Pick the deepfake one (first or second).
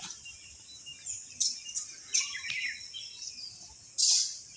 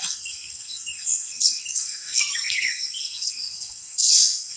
second